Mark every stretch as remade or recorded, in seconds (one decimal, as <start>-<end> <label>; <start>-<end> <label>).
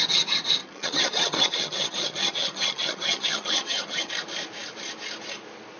0.0-0.6 recorded; 0.6-4.1 remade; 4.1-5.8 recorded